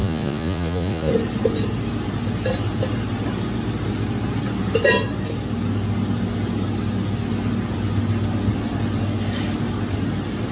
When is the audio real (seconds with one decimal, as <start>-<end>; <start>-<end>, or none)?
1.1-10.5